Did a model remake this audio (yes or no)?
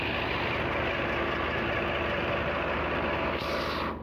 no